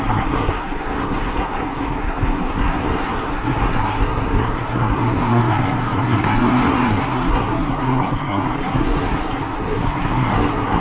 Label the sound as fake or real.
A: fake